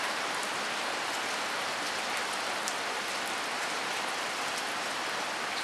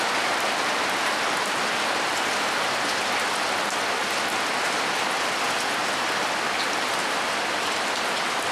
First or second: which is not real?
first